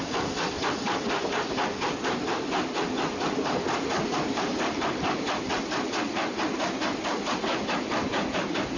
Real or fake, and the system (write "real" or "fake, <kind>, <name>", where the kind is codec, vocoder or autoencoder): real